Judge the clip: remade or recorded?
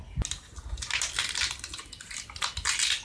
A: recorded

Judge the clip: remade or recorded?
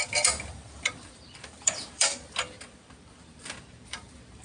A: remade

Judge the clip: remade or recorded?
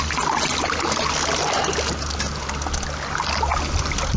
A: recorded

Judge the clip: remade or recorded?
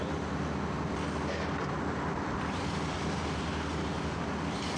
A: remade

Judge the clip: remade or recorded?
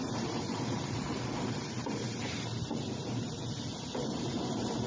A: remade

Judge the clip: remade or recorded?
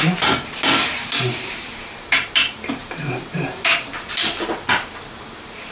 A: remade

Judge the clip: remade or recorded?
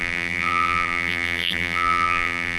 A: remade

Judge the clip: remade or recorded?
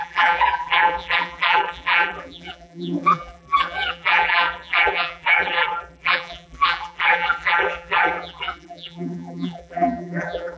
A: remade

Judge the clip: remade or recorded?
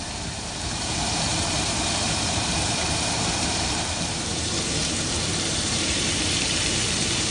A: remade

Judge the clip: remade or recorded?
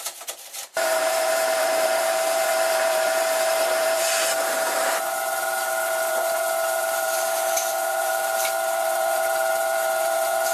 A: remade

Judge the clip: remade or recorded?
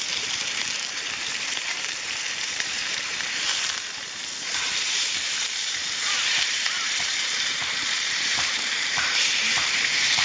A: remade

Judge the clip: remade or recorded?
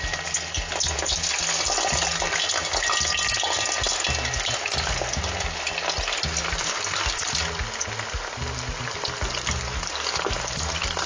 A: recorded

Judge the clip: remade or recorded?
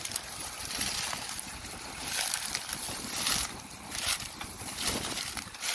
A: recorded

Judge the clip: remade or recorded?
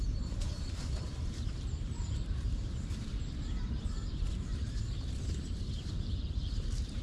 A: remade